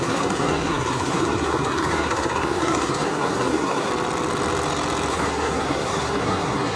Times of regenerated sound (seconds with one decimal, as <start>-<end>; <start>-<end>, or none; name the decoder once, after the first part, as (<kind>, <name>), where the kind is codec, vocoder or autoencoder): 0.0-3.9 (codec, SNAC); 5.1-6.8